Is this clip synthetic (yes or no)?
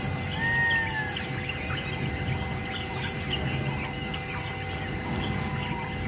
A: no